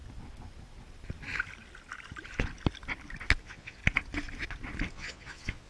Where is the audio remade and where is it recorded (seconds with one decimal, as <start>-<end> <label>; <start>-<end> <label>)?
0.0-3.4 recorded; 3.4-3.8 remade; 3.8-4.9 recorded; 4.9-5.7 remade